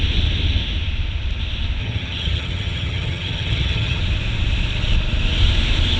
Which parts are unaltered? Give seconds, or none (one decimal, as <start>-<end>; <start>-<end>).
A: 0.0-1.8; 4.0-6.0